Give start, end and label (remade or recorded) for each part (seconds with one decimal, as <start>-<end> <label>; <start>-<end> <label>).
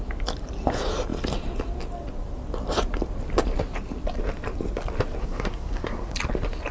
0.0-5.2 recorded; 5.2-6.1 remade; 6.1-6.7 recorded